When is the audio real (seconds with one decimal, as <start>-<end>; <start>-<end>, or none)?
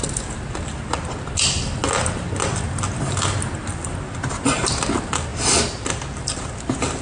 0.0-7.0